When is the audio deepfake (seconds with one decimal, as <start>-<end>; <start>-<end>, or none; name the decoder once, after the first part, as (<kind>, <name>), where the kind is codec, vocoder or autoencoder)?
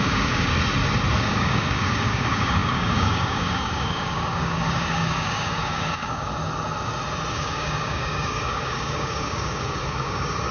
0.0-0.5 (codec, DAC); 1.2-6.3; 7.3-10.5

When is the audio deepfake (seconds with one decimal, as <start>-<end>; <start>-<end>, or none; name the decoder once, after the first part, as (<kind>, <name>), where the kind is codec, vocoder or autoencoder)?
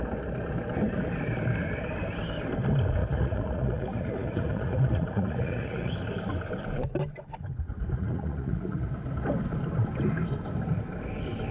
3.0-5.9 (vocoder, Vocos); 8.0-8.9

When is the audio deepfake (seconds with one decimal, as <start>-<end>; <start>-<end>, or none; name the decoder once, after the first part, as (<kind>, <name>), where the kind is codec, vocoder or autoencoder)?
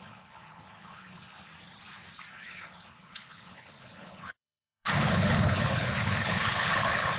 0.0-1.5 (codec, HILCodec); 2.3-7.2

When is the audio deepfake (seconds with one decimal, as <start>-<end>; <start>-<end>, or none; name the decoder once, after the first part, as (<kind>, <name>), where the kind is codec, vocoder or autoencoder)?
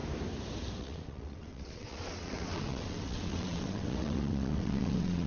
0.8-5.3 (vocoder, WaveNeXt)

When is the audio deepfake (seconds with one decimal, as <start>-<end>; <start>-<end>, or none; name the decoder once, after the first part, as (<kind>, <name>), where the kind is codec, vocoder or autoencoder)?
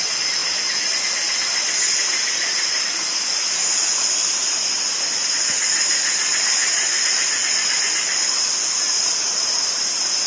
none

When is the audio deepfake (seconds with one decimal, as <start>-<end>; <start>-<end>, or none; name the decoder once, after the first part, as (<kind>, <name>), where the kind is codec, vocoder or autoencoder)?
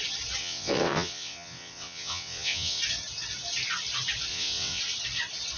0.4-2.8 (vocoder, WaveNeXt); 4.3-4.8